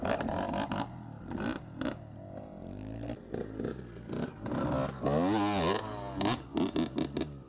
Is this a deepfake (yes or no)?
no